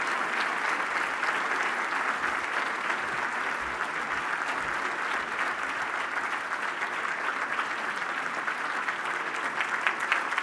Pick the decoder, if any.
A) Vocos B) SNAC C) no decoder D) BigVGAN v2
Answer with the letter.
C